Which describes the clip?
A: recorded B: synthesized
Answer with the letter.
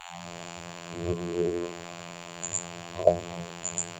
B